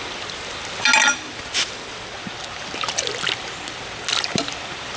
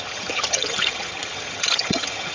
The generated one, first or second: second